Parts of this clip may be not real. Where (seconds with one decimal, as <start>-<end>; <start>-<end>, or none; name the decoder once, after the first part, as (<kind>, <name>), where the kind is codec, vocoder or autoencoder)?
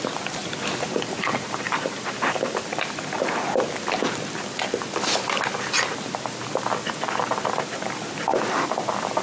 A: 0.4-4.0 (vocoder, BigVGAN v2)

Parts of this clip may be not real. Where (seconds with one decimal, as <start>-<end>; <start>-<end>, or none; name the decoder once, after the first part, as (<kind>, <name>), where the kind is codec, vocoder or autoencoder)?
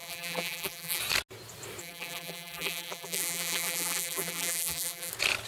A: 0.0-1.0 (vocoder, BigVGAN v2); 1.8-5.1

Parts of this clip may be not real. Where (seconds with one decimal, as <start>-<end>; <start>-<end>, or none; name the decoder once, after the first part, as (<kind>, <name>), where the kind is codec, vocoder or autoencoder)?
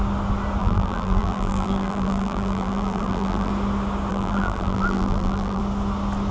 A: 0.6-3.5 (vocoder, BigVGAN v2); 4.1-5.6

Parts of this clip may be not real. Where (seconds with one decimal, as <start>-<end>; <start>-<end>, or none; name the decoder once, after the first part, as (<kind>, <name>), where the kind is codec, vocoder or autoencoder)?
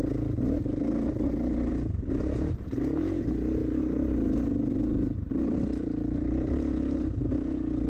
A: 1.7-2.2 (vocoder, BigVGAN v2); 3.6-7.9